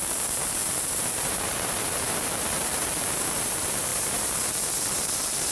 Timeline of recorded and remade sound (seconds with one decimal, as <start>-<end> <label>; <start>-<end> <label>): 0.0-5.5 remade